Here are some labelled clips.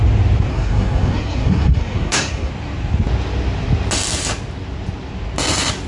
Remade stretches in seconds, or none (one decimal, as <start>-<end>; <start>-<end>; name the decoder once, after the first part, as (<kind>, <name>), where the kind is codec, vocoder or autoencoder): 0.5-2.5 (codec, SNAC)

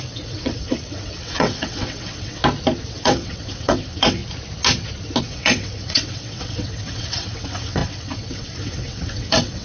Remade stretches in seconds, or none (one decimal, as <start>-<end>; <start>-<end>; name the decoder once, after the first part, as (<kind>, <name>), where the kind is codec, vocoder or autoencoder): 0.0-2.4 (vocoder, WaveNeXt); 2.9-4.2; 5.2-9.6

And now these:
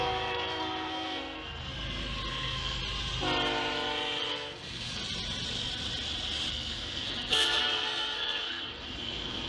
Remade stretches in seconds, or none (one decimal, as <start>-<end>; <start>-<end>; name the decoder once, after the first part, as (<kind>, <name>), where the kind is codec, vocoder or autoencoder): 0.0-1.7 (codec, SNAC); 2.3-2.8; 4.3-5.0; 6.5-9.5

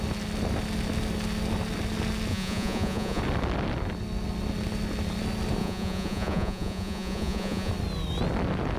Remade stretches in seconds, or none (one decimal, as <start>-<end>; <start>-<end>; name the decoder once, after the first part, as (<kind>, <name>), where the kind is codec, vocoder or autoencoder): 2.3-3.2 (vocoder, Vocos); 5.6-7.7

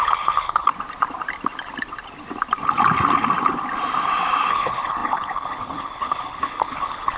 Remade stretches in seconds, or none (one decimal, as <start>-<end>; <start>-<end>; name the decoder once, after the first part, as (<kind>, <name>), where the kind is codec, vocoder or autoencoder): 0.0-0.7 (codec, HILCodec); 4.5-7.2

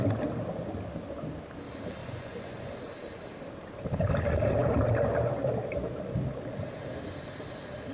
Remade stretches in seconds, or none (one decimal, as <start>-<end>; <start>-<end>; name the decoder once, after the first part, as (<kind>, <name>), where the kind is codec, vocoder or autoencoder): 2.0-2.8 (vocoder, Vocos)

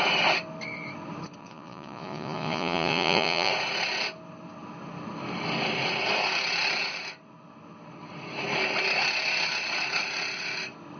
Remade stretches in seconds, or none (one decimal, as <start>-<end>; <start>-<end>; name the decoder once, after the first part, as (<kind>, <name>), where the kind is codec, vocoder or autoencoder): 1.4-3.5 (vocoder, Vocos)

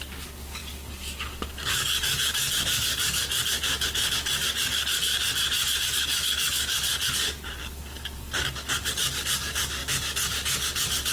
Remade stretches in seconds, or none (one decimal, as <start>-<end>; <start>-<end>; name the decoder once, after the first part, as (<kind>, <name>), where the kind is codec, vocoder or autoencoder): 0.0-5.1 (codec, DAC); 5.8-11.1